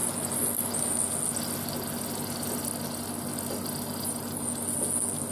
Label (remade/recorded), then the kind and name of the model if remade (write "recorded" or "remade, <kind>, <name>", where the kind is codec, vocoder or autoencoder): recorded